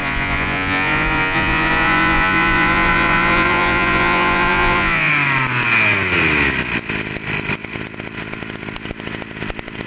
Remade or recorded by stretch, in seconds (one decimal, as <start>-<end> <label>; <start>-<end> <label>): 0.0-5.1 remade; 5.1-9.9 recorded